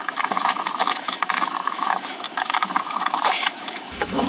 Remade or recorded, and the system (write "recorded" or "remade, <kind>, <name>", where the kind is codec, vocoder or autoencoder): remade, autoencoder, DAC-VAE